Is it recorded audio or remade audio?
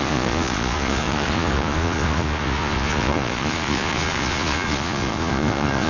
remade